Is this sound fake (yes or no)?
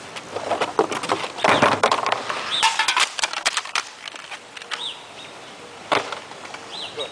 no